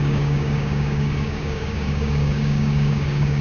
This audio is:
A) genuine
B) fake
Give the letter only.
B